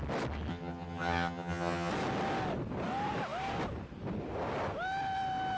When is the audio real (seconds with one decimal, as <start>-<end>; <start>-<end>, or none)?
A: 0.0-0.5; 1.9-5.6